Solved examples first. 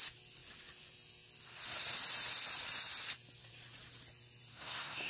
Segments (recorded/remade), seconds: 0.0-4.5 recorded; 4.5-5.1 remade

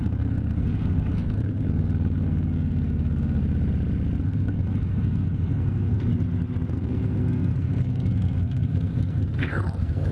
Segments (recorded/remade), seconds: 0.0-3.4 remade; 3.4-4.2 recorded; 4.2-6.1 remade; 6.1-6.7 recorded; 6.7-10.1 remade

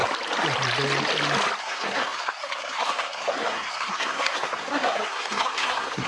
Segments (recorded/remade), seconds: 0.0-1.6 recorded; 1.6-6.1 remade

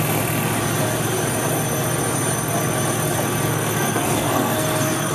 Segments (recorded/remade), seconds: 0.0-3.5 recorded; 3.5-5.1 remade

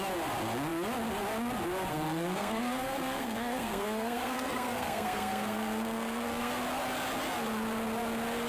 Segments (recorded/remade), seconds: 0.0-1.9 recorded; 1.9-6.5 remade; 6.5-8.5 recorded